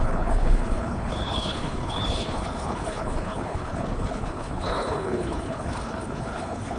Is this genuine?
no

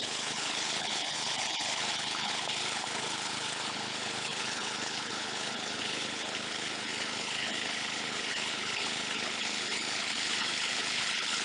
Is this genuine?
no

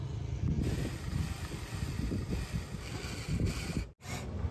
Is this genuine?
yes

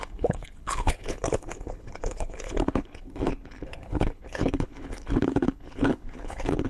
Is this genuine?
no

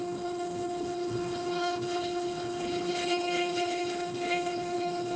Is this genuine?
no